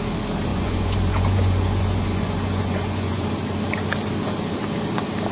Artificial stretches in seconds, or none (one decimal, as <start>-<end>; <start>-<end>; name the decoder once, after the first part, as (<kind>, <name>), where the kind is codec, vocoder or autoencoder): 0.5-3.2 (vocoder, Vocos)